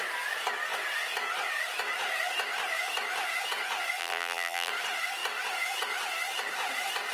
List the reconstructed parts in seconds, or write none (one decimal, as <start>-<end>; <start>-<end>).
4.0-4.7